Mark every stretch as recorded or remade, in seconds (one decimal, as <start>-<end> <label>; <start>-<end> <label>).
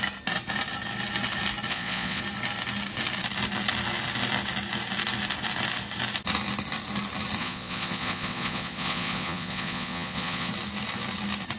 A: 0.0-1.7 recorded; 1.7-2.2 remade; 2.2-7.4 recorded; 7.4-10.5 remade; 10.5-11.6 recorded